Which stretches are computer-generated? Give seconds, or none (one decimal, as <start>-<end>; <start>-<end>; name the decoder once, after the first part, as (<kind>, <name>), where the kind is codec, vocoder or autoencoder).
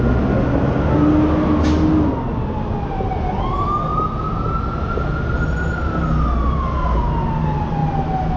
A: none